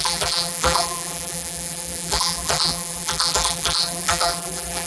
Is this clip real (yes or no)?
no